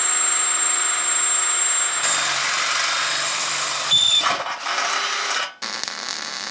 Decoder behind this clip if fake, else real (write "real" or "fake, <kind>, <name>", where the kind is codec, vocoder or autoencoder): real